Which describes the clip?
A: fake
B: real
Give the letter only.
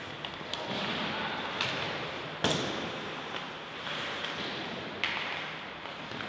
B